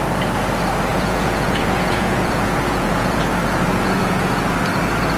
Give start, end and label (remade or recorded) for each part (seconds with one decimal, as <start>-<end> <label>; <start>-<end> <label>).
0.0-0.9 recorded; 0.9-3.2 remade; 3.2-3.7 recorded; 3.7-4.4 remade; 4.4-5.2 recorded

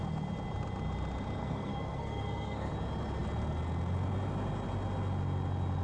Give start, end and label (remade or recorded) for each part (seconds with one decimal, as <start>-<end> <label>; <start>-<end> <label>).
0.0-1.4 recorded; 1.4-2.7 remade; 2.7-5.8 recorded

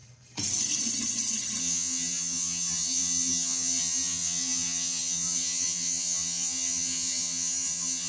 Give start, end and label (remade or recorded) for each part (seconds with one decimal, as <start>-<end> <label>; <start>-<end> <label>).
0.0-1.6 recorded; 1.6-8.1 remade

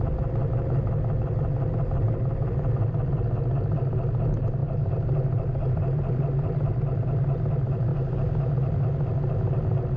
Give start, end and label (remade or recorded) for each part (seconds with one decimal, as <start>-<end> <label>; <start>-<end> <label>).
0.0-4.6 recorded; 4.6-6.2 remade; 6.2-7.9 recorded; 7.9-8.8 remade; 8.8-10.0 recorded

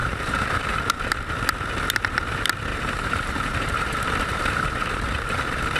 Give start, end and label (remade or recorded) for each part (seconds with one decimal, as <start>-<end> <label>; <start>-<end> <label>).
0.0-0.8 remade; 0.8-2.7 recorded; 2.7-5.8 remade

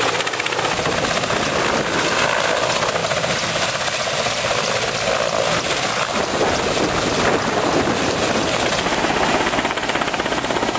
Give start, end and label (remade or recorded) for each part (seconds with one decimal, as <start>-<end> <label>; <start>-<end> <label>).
0.0-10.8 recorded